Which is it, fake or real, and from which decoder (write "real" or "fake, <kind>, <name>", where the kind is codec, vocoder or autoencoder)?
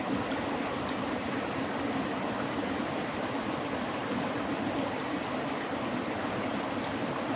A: real